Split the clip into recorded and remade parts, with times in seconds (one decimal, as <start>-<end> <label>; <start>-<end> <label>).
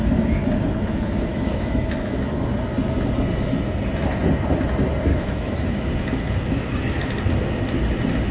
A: 0.0-1.3 recorded; 1.3-1.8 remade; 1.8-5.1 recorded; 5.1-5.9 remade; 5.9-8.3 recorded